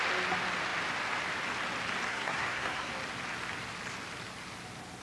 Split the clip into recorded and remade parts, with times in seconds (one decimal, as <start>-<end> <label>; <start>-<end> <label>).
0.0-2.1 recorded; 2.1-2.9 remade; 2.9-5.0 recorded